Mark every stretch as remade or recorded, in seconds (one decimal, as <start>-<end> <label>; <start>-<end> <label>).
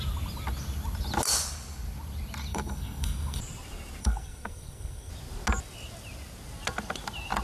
0.0-2.5 recorded; 2.5-3.4 remade; 3.4-4.0 recorded; 4.0-5.1 remade; 5.1-7.4 recorded